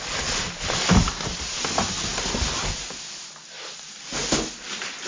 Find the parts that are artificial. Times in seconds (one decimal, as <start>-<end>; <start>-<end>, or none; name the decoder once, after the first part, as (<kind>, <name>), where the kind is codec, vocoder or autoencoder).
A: none